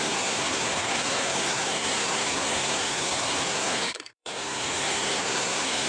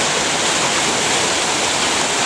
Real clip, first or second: second